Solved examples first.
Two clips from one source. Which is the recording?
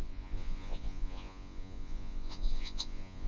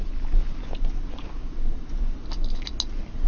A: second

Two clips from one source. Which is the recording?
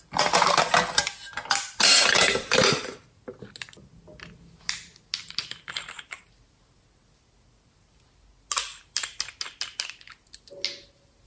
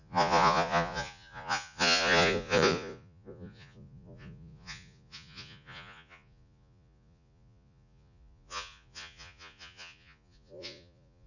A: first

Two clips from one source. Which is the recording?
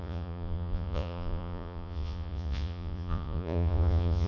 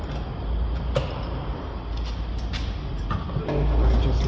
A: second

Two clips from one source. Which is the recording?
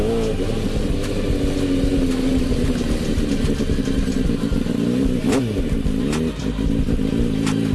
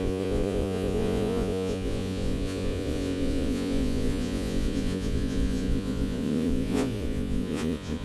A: first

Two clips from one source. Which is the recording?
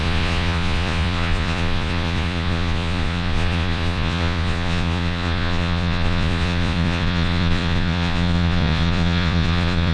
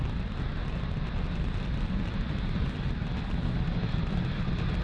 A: second